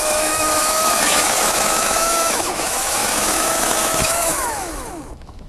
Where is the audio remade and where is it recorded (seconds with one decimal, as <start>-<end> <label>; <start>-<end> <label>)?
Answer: 0.0-5.5 remade